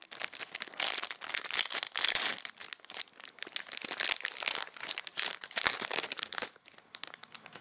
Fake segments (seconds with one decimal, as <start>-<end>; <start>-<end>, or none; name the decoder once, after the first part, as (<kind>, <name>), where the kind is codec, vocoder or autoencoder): 5.1-5.8 (vocoder, BigVGAN v2)